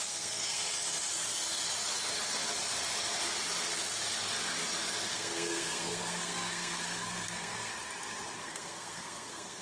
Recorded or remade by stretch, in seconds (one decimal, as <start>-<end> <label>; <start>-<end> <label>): 0.0-0.6 remade; 0.6-5.1 recorded; 5.1-7.7 remade; 7.7-8.4 recorded; 8.4-9.6 remade